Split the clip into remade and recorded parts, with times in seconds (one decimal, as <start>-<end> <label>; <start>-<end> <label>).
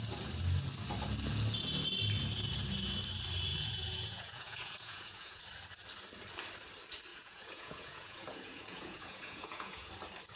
0.0-3.5 recorded; 3.5-5.4 remade; 5.4-7.1 recorded; 7.1-9.9 remade; 9.9-10.4 recorded